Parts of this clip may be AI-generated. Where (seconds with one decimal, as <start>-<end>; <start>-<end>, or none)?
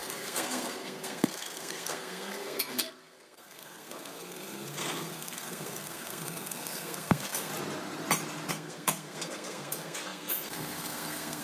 0.0-7.5; 8.5-11.4